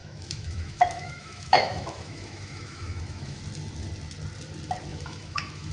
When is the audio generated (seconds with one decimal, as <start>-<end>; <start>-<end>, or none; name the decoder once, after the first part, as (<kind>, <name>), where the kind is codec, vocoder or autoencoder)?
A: 0.0-3.4 (autoencoder, DAC-VAE); 4.9-5.7